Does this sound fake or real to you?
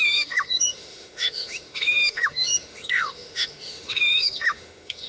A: fake